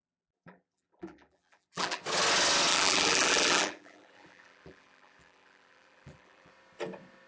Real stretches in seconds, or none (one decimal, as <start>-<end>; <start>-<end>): 2.0-2.7; 6.5-7.3